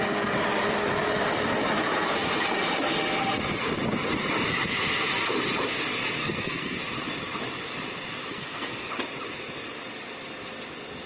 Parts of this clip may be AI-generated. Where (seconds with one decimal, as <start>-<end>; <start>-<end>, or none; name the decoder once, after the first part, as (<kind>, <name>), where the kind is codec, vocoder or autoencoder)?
6.2-6.8 (codec, SNAC); 8.3-8.9